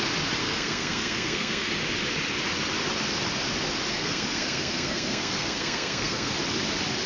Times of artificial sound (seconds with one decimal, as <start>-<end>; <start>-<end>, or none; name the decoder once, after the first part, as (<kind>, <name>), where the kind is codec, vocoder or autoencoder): 0.4-1.7 (codec, SNAC); 3.9-6.3